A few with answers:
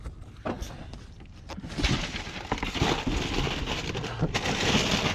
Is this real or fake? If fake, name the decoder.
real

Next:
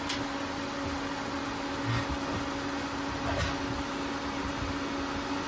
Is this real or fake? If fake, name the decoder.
real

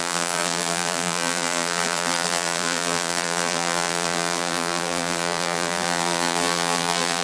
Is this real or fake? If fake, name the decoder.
fake, vocoder, BigVGAN v2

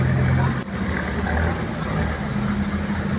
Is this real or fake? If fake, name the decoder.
real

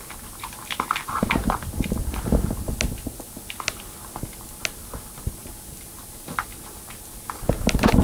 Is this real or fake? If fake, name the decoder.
real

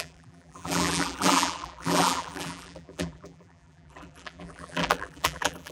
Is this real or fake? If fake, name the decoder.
fake, vocoder, BigVGAN v2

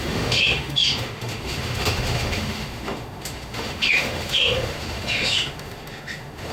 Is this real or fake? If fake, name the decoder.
fake, autoencoder, DAC-VAE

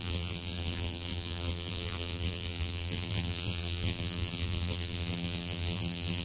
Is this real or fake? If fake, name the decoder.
fake, vocoder, BigVGAN v2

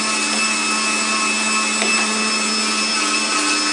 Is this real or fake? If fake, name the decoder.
real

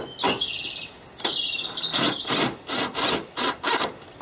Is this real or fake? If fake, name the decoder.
real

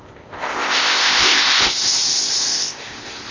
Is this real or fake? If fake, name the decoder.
fake, codec, ZipCodec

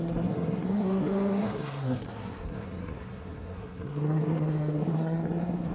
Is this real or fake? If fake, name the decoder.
fake, codec, SNAC